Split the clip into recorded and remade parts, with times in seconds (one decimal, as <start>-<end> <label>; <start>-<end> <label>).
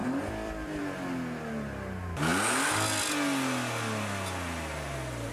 0.0-0.8 remade; 0.8-5.3 recorded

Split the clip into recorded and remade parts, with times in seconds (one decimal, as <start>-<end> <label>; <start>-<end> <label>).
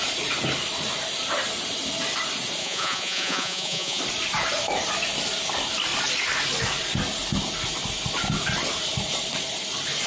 0.0-2.6 recorded; 2.6-4.0 remade; 4.0-10.1 recorded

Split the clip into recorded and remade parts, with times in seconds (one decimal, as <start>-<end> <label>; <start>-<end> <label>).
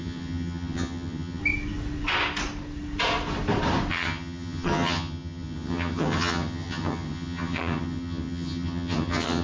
0.0-1.4 remade; 1.4-3.9 recorded; 3.9-9.4 remade